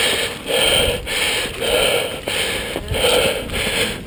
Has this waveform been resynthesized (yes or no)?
no